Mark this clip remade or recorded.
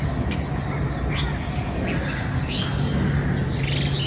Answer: recorded